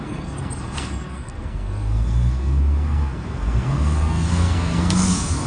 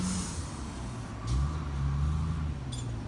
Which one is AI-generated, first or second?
first